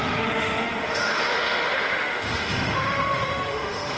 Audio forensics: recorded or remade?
remade